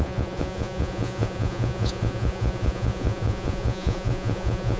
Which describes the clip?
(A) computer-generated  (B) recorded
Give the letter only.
A